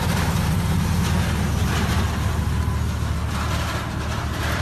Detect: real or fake real